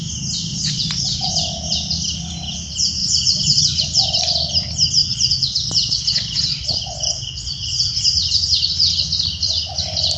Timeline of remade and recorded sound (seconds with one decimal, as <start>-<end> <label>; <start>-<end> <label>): 0.0-0.5 recorded; 0.5-1.3 remade; 1.3-3.0 recorded; 3.0-3.6 remade; 3.6-5.0 recorded; 5.0-8.2 remade; 8.2-10.2 recorded